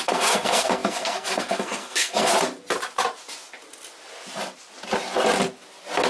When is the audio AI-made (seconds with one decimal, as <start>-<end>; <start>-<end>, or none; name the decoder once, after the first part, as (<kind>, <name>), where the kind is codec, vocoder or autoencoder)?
0.0-2.3 (codec, SNAC)